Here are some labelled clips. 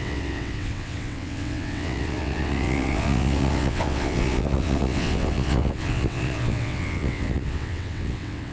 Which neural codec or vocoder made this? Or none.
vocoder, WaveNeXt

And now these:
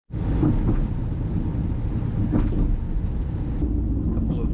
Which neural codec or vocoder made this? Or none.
none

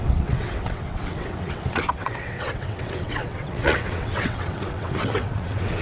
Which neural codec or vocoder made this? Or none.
vocoder, WaveNeXt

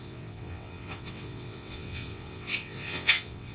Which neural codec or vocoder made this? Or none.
vocoder, WaveNeXt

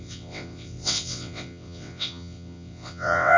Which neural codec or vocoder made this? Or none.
vocoder, WaveNeXt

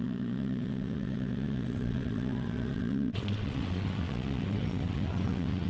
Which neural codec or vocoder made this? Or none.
vocoder, WaveNeXt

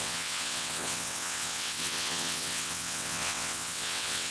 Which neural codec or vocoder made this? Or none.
vocoder, WaveNeXt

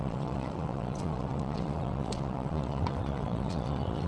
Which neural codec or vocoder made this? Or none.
vocoder, WaveNeXt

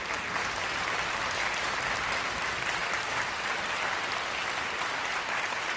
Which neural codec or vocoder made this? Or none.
none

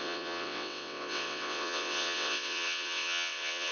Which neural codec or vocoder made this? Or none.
vocoder, WaveNeXt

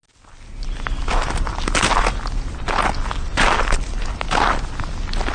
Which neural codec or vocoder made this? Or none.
none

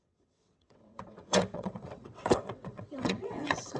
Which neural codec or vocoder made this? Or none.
vocoder, WaveNeXt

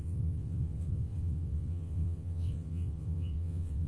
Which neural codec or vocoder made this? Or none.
vocoder, WaveNeXt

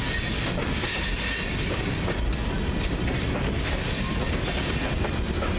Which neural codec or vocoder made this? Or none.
none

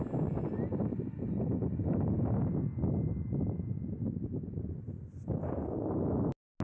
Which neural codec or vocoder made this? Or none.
none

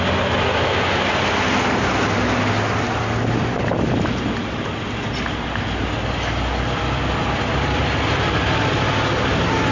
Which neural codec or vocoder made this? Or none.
none